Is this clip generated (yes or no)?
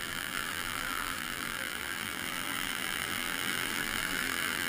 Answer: yes